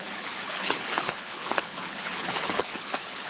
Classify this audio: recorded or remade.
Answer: remade